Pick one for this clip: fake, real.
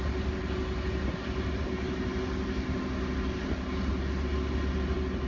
real